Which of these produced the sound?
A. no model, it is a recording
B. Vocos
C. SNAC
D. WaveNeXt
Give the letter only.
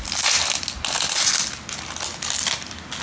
A